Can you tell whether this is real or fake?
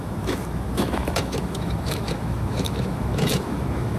fake